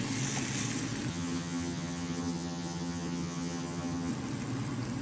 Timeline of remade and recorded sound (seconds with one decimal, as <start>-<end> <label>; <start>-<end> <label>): 0.0-1.1 recorded; 1.1-4.1 remade; 4.1-5.0 recorded

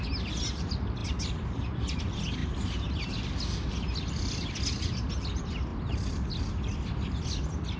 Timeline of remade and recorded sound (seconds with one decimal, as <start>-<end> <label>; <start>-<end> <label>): 0.0-7.8 recorded

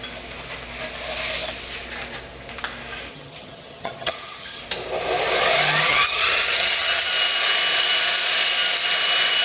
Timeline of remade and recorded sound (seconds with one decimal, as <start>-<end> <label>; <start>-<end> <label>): 0.0-3.1 recorded; 3.1-4.6 remade; 4.6-5.9 recorded; 5.9-7.1 remade; 7.1-9.4 recorded

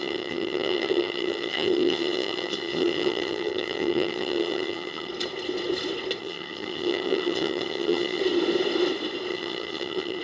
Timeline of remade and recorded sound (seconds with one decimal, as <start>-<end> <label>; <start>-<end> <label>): 0.0-5.1 remade; 5.1-6.2 recorded; 6.2-8.2 remade; 8.2-9.3 recorded; 9.3-10.2 remade

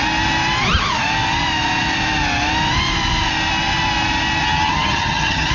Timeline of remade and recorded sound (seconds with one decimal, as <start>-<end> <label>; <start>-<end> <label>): 0.0-4.4 recorded; 4.4-5.5 remade

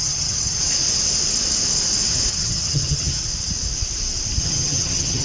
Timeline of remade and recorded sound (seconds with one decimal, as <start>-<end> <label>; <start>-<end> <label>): 0.0-0.6 remade; 0.6-2.3 recorded; 2.3-3.2 remade; 3.2-4.4 recorded; 4.4-5.2 remade

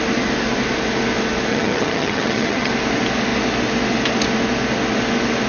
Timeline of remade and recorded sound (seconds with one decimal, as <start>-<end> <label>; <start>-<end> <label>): 0.0-1.5 recorded; 1.5-2.7 remade; 2.7-5.5 recorded